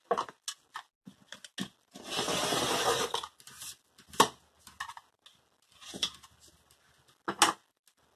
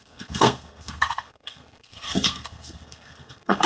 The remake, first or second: second